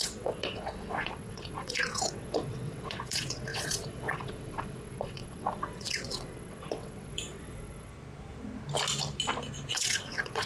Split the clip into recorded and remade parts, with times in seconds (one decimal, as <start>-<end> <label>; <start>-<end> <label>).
0.0-7.9 remade; 7.9-9.7 recorded; 9.7-10.5 remade